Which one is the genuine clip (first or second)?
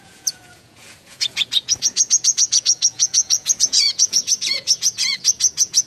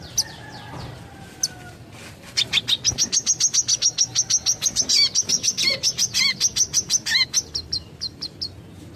second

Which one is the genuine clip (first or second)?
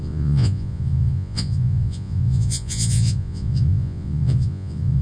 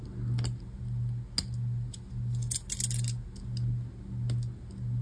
second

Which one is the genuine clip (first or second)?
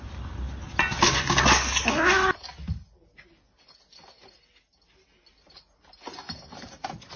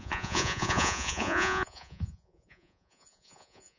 first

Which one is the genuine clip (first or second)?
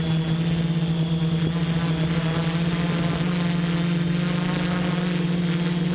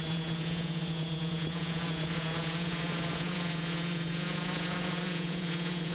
first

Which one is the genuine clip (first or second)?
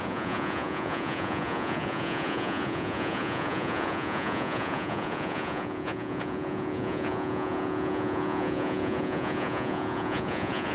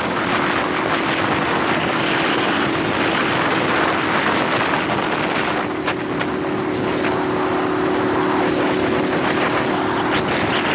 second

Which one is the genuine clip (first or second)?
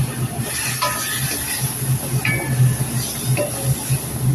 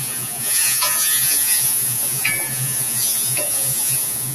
first